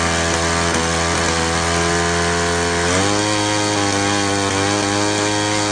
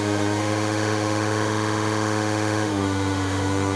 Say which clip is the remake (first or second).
second